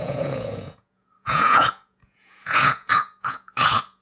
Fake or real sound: fake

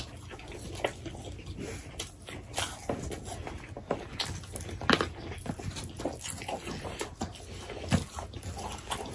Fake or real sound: real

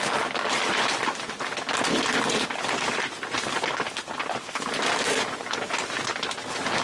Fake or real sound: real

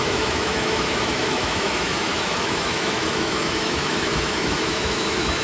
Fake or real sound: fake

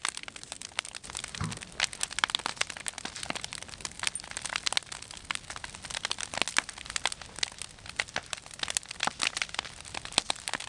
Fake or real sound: real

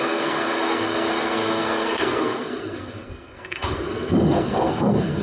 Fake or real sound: fake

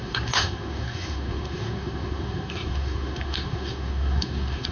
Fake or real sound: fake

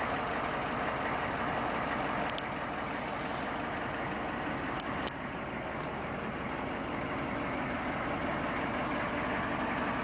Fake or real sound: real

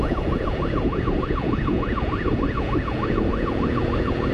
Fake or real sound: fake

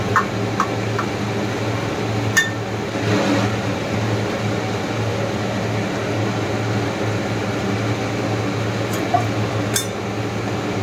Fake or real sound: real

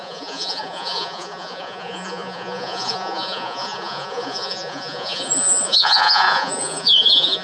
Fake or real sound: fake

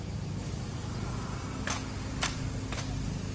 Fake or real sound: real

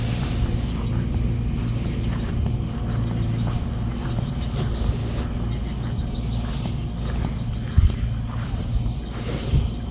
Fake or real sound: real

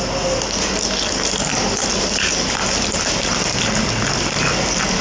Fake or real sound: real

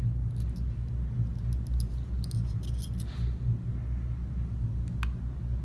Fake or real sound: real